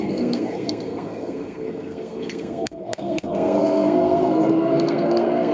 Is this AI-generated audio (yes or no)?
yes